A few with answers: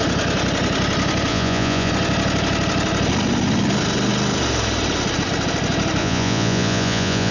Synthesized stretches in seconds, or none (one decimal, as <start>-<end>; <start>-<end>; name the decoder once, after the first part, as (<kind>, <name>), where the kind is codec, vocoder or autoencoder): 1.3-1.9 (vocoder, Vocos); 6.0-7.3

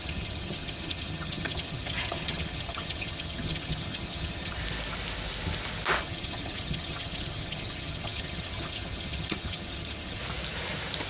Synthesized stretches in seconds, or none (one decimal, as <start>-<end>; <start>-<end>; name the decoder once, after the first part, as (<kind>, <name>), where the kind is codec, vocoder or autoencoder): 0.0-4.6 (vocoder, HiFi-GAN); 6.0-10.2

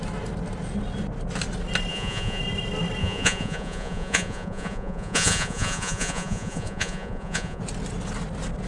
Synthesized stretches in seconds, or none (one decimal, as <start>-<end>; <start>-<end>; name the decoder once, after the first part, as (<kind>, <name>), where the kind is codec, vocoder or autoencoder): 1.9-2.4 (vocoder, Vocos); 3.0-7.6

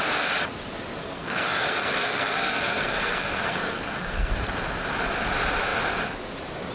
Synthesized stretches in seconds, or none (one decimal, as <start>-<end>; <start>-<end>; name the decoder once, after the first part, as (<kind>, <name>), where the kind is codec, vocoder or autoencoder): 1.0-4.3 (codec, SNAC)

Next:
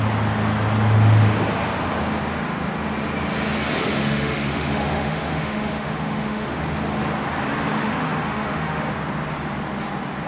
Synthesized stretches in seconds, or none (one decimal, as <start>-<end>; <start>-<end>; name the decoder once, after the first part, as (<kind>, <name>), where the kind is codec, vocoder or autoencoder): 3.8-6.6 (autoencoder, DAC-VAE); 7.8-8.9

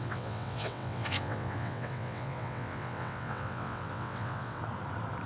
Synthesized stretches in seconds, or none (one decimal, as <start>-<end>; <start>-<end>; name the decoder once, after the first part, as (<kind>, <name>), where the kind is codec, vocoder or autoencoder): 0.0-4.6 (vocoder, WaveNeXt)

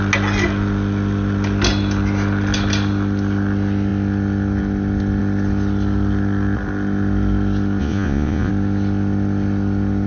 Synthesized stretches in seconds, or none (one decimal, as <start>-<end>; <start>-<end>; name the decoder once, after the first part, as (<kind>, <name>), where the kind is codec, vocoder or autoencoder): 7.8-8.5 (vocoder, Vocos)

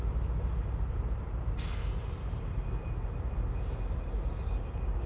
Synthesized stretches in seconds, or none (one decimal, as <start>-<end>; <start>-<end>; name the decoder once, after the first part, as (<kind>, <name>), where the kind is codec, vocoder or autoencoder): 1.8-2.6 (vocoder, BigVGAN v2)